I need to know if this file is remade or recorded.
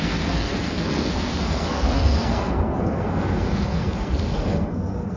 remade